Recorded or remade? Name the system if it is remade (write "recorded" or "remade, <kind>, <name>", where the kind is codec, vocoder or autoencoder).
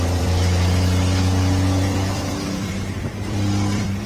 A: remade, vocoder, BigVGAN v2